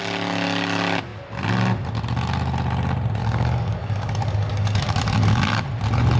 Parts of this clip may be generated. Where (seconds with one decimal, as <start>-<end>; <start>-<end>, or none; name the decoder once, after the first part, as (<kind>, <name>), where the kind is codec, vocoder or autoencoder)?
3.2-5.6 (codec, DAC)